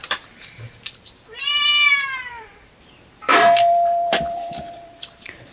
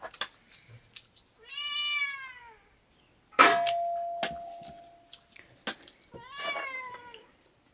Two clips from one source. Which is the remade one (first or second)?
first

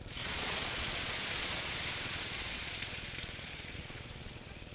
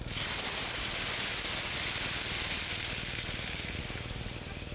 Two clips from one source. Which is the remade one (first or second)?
first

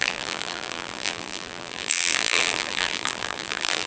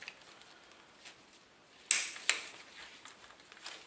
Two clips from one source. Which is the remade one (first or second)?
first